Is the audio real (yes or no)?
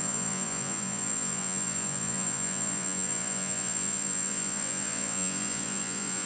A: no